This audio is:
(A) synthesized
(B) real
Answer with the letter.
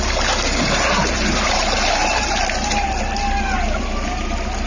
B